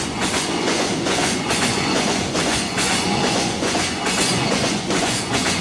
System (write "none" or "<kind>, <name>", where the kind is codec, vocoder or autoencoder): vocoder, Vocos